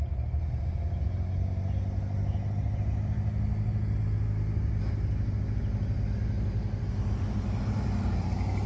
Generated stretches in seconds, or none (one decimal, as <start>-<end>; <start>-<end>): none